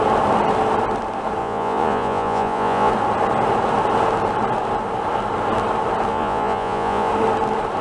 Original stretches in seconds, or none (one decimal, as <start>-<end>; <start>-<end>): 0.0-1.4; 2.9-6.1; 7.1-7.8